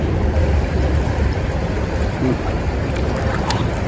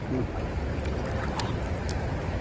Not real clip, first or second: first